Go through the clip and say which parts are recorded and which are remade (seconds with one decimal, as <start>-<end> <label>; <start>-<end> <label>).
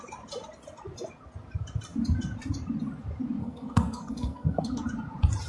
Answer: 0.0-3.4 recorded; 3.4-4.8 remade; 4.8-5.5 recorded